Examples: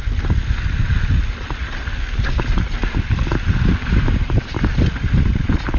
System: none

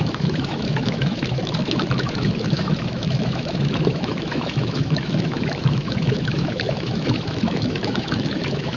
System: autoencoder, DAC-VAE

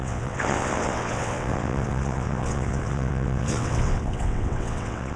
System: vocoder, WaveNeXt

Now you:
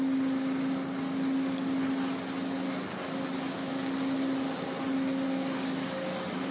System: none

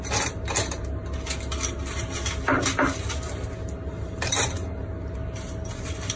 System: none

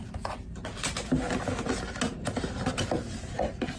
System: none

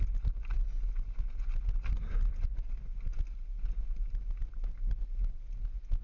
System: none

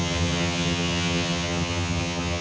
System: vocoder, HiFi-GAN